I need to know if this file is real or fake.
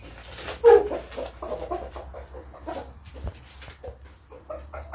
real